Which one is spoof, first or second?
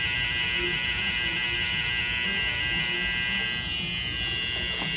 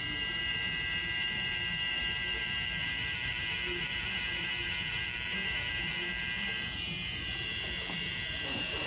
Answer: second